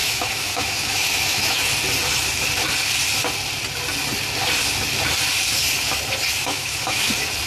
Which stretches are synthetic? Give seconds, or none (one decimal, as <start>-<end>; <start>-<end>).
0.0-1.8; 6.4-7.1